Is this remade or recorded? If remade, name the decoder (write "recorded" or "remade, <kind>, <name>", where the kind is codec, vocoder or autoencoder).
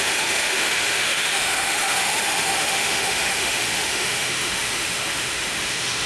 remade, autoencoder, DAC-VAE